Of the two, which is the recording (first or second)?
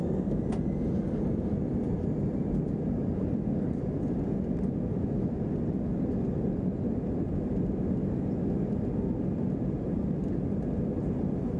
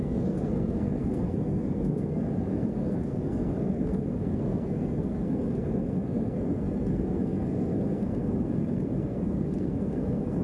first